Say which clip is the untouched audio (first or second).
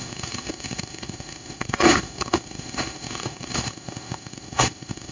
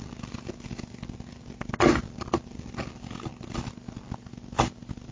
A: second